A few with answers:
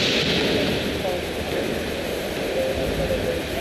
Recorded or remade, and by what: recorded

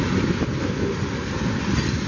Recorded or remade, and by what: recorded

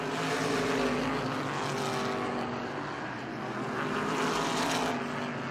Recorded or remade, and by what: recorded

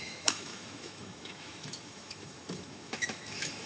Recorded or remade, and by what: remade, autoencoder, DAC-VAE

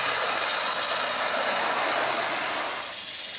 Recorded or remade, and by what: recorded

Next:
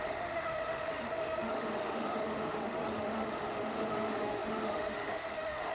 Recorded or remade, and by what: remade, autoencoder, DAC-VAE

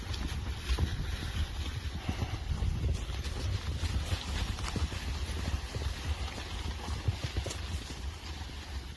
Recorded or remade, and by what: recorded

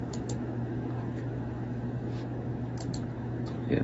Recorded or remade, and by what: remade, autoencoder, DAC-VAE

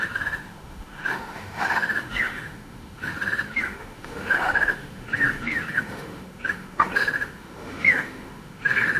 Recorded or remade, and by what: remade, autoencoder, DAC-VAE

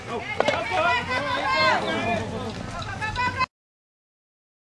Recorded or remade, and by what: recorded